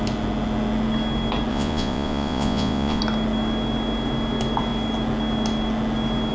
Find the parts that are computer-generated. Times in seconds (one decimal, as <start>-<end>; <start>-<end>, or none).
1.5-3.0